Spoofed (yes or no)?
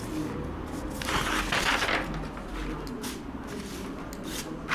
no